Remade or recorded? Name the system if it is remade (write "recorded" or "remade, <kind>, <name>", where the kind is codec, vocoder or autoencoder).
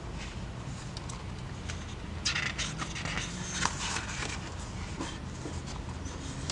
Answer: recorded